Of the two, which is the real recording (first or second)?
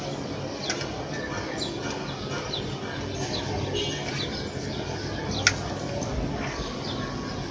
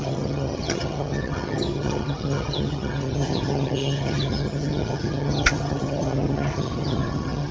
first